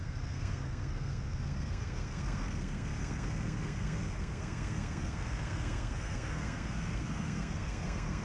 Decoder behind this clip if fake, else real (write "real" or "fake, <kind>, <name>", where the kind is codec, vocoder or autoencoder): fake, codec, SNAC